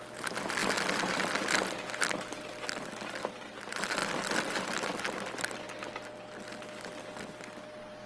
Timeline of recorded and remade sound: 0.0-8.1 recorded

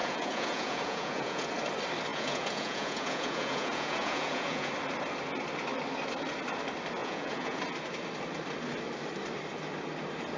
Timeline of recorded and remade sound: 0.0-1.5 remade; 1.5-2.1 recorded; 2.1-4.7 remade; 4.7-7.0 recorded; 7.0-7.6 remade; 7.6-10.4 recorded

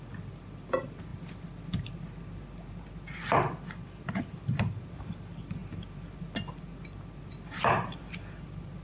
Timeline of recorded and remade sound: 0.0-8.8 recorded

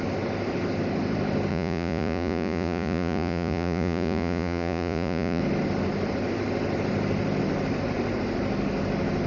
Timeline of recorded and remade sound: 0.0-1.5 recorded; 1.5-5.4 remade; 5.4-9.3 recorded

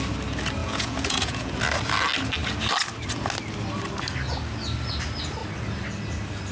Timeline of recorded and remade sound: 0.0-0.6 recorded; 0.6-1.6 remade; 1.6-6.5 recorded

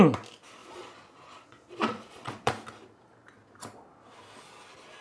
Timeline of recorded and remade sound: 0.0-0.6 recorded; 0.6-2.5 remade; 2.5-5.0 recorded

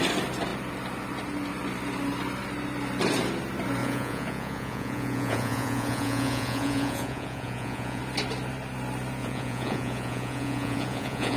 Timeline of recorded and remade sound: 0.0-3.8 recorded; 3.8-8.0 remade; 8.0-9.2 recorded; 9.2-11.4 remade

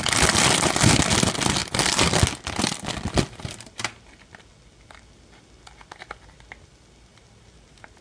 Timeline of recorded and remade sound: 0.0-8.0 recorded